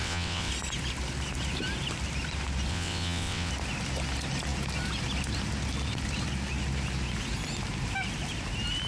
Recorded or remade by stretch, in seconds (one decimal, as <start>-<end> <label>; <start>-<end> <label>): 0.0-0.5 remade; 0.5-2.7 recorded; 2.7-3.5 remade; 3.5-8.9 recorded